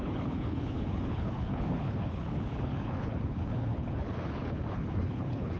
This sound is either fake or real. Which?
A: fake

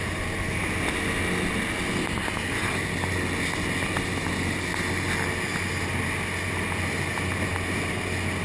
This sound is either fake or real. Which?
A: real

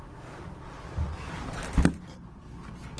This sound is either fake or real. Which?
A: real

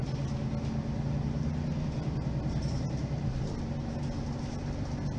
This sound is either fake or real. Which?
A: real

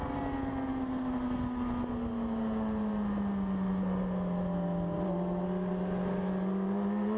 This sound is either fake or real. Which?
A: real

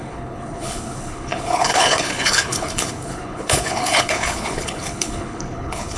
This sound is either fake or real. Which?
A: fake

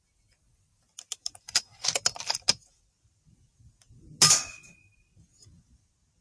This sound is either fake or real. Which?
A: real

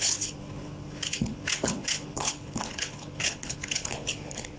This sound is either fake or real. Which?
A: fake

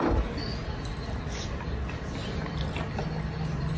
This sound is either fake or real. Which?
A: real